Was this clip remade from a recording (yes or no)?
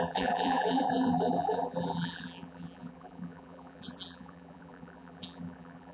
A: yes